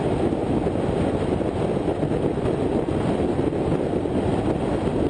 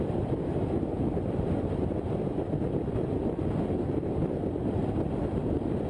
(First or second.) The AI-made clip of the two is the second